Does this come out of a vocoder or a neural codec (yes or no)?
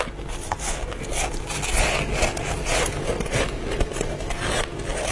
no